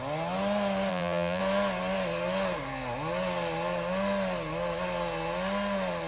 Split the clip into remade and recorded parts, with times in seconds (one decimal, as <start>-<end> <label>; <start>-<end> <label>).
0.0-0.9 recorded; 0.9-1.4 remade; 1.4-6.1 recorded